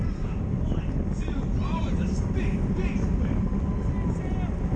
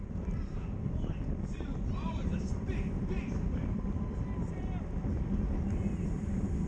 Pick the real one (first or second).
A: first